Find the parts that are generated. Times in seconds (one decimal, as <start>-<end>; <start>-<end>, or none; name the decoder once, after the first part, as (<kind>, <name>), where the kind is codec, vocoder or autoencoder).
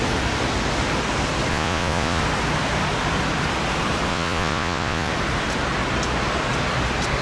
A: 1.5-2.2 (vocoder, Vocos); 4.1-5.1